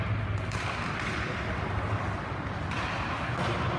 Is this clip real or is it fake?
real